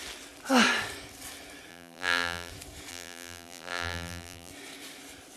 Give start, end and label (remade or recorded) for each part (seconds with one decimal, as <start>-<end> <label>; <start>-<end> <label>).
0.0-1.7 recorded; 1.7-2.5 remade; 2.5-2.9 recorded; 2.9-4.5 remade; 4.5-5.4 recorded